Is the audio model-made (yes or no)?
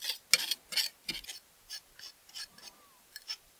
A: no